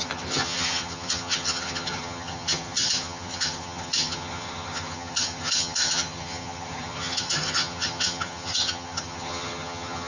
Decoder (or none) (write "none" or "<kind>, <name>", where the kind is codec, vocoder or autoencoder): vocoder, HiFi-GAN